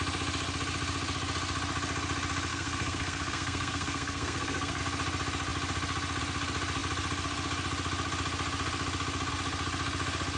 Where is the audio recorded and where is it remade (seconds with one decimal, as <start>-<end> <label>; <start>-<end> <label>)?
0.0-2.5 recorded; 2.5-4.8 remade; 4.8-10.4 recorded